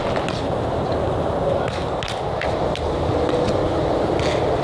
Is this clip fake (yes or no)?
no